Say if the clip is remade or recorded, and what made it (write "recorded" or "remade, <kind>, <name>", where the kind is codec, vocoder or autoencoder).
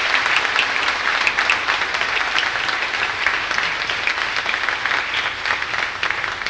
recorded